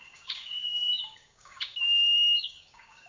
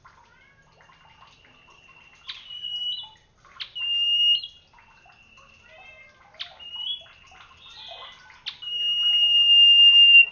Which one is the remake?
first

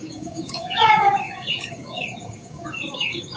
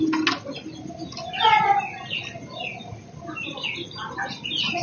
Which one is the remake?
first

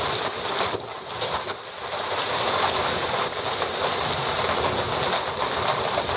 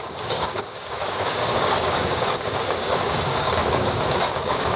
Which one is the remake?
second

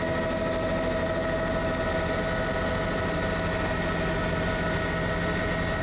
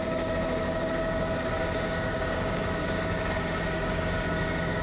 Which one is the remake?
second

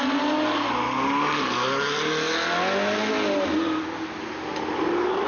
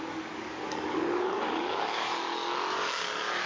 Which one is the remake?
second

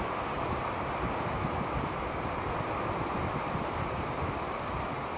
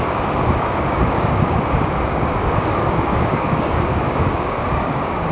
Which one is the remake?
second